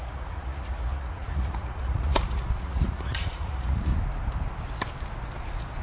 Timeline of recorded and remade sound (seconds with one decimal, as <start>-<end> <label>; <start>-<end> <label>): 0.0-3.9 remade; 3.9-5.8 recorded